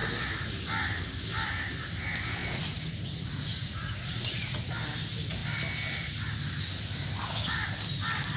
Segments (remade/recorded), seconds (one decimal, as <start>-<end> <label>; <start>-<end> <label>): 0.0-2.4 recorded; 2.4-4.7 remade; 4.7-8.4 recorded